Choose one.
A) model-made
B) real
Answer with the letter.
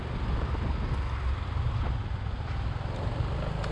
B